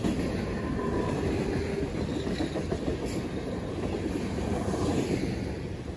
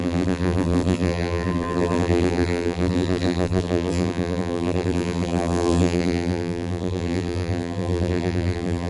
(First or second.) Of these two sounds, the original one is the first